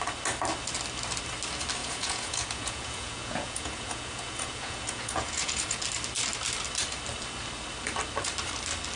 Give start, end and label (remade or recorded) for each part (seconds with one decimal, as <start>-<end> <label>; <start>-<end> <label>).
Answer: 0.0-1.8 recorded; 1.8-5.8 remade; 5.8-9.0 recorded